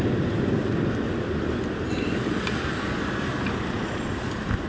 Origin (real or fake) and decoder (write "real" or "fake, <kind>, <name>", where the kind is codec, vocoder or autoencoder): real